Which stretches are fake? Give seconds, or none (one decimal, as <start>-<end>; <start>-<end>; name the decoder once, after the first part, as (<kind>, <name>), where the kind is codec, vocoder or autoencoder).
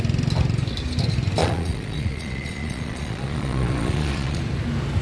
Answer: 1.4-4.4 (vocoder, Vocos)